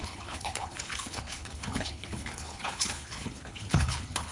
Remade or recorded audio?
remade